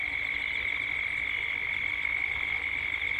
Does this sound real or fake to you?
real